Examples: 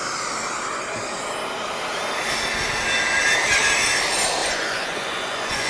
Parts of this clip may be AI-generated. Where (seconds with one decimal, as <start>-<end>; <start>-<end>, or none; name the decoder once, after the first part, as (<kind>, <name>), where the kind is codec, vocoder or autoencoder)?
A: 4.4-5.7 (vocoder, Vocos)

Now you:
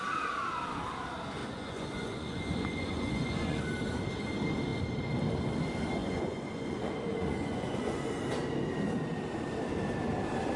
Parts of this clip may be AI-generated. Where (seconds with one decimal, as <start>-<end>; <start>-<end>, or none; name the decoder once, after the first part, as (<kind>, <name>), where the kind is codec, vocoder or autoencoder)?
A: 1.4-3.6 (vocoder, Vocos); 6.0-8.2

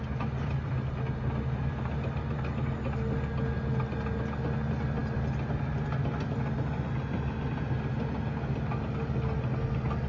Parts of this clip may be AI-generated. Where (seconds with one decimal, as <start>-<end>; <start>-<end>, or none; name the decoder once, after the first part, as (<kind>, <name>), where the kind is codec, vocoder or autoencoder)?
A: none